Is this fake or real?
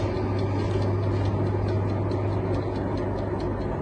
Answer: real